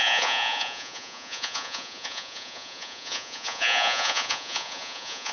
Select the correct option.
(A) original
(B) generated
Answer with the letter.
B